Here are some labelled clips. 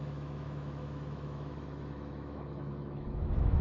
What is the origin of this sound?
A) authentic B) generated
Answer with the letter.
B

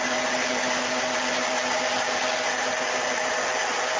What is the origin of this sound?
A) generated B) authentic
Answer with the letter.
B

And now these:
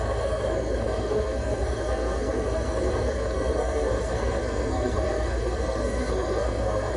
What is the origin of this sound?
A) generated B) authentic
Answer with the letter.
A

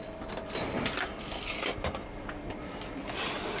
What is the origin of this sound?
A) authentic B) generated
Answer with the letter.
B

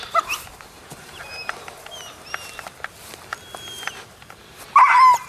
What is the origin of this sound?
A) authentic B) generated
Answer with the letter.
A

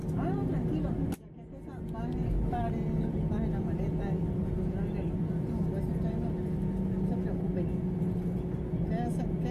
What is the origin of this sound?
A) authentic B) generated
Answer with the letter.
A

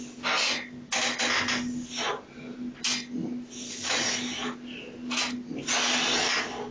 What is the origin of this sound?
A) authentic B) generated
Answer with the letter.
A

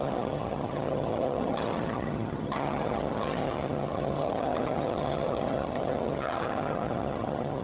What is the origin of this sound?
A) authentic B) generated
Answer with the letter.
B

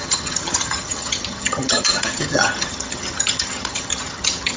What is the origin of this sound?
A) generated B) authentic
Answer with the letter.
A